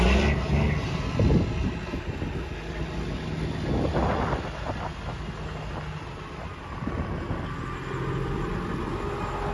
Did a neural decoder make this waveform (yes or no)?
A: no